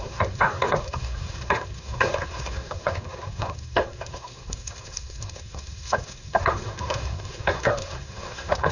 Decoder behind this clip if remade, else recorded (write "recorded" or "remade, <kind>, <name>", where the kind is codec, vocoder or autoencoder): remade, codec, SNAC